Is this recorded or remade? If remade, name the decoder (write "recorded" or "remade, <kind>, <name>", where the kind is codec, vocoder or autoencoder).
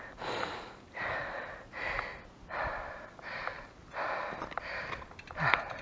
recorded